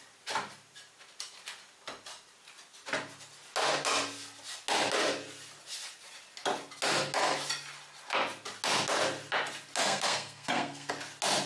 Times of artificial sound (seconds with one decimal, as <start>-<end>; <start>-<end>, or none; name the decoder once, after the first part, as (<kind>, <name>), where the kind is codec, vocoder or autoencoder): 9.8-10.9 (codec, SNAC)